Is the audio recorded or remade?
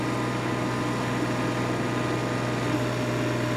recorded